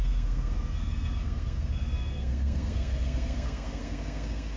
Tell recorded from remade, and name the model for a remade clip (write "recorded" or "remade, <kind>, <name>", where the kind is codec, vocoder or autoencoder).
remade, codec, SNAC